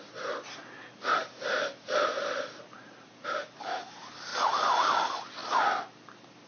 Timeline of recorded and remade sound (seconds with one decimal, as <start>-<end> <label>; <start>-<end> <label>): 0.0-6.5 recorded